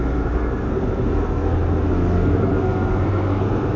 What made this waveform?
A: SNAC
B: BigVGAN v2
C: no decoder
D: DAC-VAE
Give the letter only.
A